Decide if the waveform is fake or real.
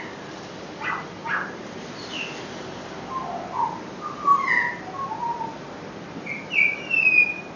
real